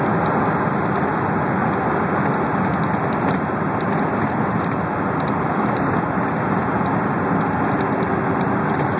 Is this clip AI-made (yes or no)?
no